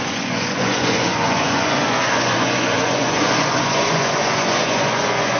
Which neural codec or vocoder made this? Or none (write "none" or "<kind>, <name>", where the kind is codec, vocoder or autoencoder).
vocoder, Vocos